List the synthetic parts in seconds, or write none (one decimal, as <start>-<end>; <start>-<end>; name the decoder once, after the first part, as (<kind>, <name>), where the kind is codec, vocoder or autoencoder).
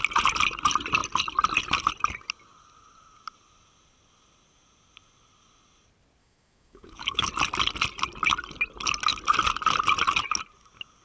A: 6.2-7.3 (autoencoder, DAC-VAE)